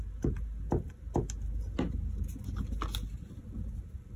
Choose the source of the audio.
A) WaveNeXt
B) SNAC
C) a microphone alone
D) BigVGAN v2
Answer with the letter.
C